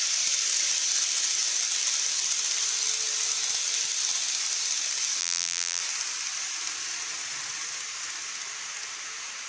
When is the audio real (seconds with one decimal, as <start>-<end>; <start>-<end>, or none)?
0.0-5.2; 5.8-9.5